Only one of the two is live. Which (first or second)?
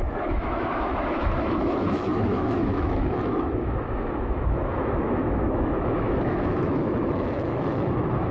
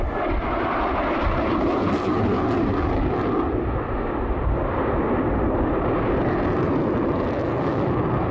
second